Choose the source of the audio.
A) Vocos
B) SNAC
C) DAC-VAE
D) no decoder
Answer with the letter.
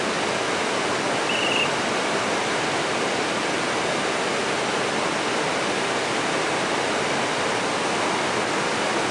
D